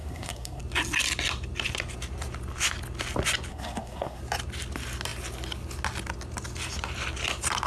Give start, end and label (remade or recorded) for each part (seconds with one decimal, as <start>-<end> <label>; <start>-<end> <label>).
0.0-0.6 remade; 0.6-3.5 recorded; 3.5-4.2 remade; 4.2-7.7 recorded